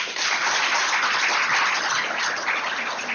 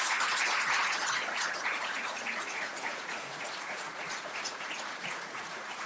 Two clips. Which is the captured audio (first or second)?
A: first